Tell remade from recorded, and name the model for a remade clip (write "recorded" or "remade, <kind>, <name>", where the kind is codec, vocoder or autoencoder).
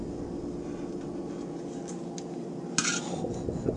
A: recorded